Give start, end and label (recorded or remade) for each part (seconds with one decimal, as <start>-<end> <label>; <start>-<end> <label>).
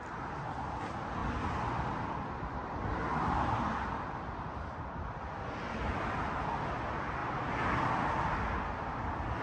0.0-9.4 recorded